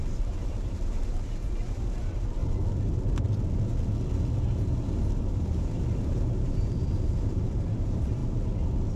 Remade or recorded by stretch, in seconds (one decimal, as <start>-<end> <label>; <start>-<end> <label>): 0.0-2.4 remade; 2.4-4.4 recorded; 4.4-8.2 remade; 8.2-9.0 recorded